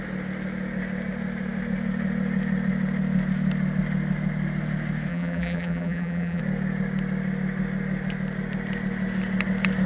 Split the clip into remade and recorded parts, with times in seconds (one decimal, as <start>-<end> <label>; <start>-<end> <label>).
0.0-5.1 recorded; 5.1-6.4 remade; 6.4-9.9 recorded